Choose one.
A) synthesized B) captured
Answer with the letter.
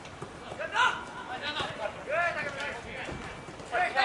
B